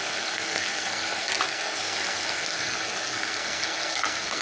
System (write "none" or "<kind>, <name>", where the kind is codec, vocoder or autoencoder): codec, SNAC